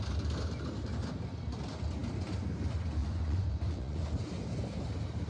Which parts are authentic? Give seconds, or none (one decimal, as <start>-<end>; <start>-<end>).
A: 0.0-3.0; 4.1-5.3